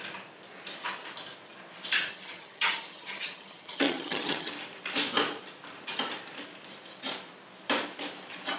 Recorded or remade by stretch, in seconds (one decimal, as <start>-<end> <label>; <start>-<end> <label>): 0.0-2.1 recorded; 2.1-4.5 remade; 4.5-8.6 recorded